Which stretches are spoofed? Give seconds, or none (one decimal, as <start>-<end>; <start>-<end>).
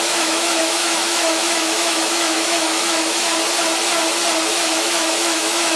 0.0-3.3; 4.5-5.8